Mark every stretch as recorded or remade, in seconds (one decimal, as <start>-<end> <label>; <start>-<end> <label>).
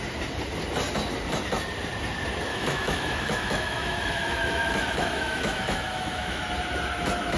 0.0-2.5 recorded; 2.5-6.4 remade; 6.4-7.4 recorded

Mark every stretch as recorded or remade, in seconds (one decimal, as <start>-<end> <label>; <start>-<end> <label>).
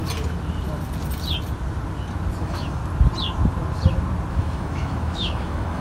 0.0-2.4 recorded; 2.4-2.8 remade; 2.8-4.3 recorded; 4.3-5.8 remade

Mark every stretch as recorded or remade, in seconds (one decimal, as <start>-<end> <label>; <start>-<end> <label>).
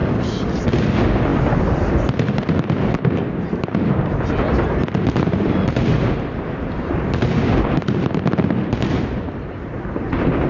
0.0-10.5 recorded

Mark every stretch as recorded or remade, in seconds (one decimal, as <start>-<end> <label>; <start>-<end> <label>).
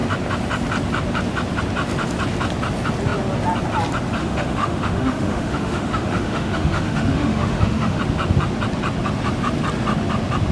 0.0-4.2 recorded; 4.2-8.0 remade; 8.0-10.5 recorded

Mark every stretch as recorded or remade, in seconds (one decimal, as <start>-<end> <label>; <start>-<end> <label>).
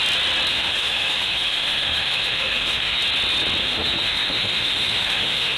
0.0-0.5 recorded; 0.5-3.0 remade; 3.0-3.6 recorded; 3.6-5.6 remade